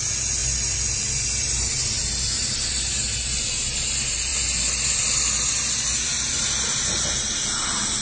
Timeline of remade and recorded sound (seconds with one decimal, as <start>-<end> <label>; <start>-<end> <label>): 0.0-8.0 recorded